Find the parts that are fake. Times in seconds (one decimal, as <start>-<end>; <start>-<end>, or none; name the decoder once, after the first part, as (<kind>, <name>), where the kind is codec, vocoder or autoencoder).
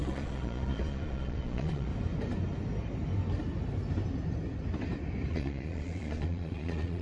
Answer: 0.0-1.9 (vocoder, Vocos); 5.3-7.0